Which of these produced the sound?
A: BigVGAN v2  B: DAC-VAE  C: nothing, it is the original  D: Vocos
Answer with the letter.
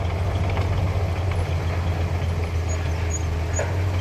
C